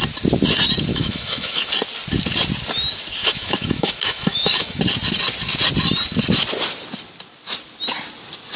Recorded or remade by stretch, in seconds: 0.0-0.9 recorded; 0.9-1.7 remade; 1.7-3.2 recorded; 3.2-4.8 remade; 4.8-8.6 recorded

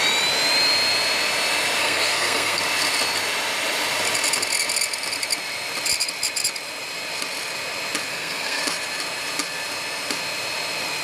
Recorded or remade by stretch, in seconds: 0.0-1.8 recorded; 1.8-2.6 remade; 2.6-8.1 recorded; 8.1-8.6 remade; 8.6-11.0 recorded

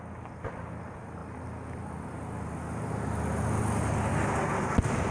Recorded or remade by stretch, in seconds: 0.0-5.1 recorded

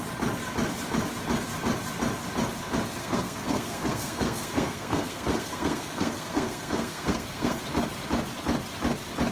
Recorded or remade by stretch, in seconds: 0.0-3.0 recorded; 3.0-7.6 remade; 7.6-9.3 recorded

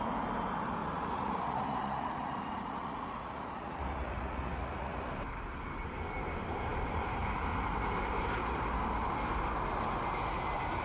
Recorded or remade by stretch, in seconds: 0.0-0.8 recorded; 0.8-5.1 remade; 5.1-10.8 recorded